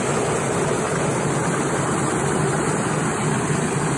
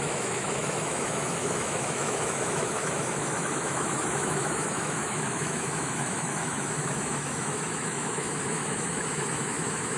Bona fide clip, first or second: first